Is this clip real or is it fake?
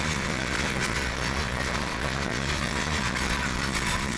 fake